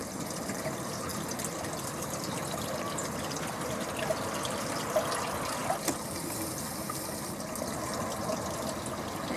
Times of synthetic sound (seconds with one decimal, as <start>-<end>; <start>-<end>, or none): none